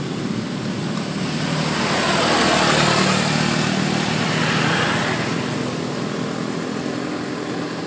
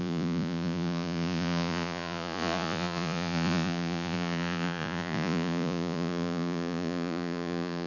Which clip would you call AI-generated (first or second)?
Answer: second